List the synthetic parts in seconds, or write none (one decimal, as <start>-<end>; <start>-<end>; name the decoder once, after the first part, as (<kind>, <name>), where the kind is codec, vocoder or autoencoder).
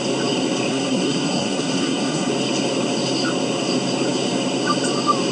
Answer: 0.7-2.3 (codec, SNAC)